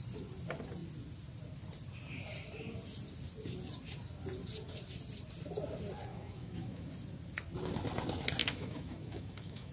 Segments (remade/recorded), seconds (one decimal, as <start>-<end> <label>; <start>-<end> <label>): 0.0-6.1 recorded; 6.1-6.9 remade; 6.9-8.4 recorded; 8.4-9.7 remade